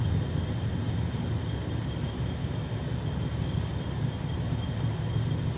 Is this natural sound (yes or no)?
yes